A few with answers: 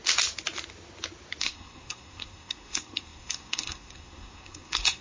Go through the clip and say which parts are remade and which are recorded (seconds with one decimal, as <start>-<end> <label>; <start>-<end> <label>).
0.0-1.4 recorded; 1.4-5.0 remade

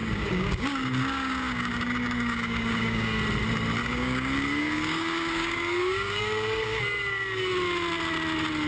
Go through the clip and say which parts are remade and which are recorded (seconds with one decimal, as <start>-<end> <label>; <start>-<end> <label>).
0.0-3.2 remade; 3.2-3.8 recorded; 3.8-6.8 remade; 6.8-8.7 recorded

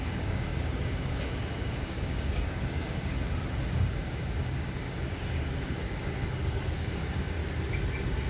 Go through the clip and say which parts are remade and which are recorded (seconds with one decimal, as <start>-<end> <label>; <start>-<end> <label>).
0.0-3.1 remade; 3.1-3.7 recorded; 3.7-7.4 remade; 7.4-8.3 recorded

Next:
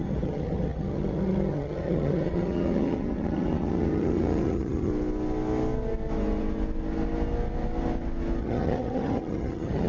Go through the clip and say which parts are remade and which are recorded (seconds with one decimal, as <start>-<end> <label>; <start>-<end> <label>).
0.0-4.9 remade; 4.9-8.4 recorded; 8.4-9.9 remade

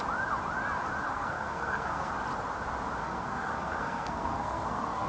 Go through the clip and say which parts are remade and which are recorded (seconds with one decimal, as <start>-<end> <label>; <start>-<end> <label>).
0.0-1.1 recorded; 1.1-2.1 remade; 2.1-3.0 recorded; 3.0-5.1 remade